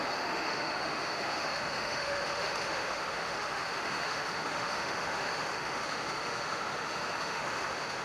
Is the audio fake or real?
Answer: fake